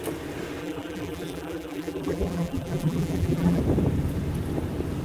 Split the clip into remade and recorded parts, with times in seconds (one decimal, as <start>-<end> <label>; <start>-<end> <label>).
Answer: 0.0-0.6 recorded; 0.6-3.6 remade; 3.6-5.0 recorded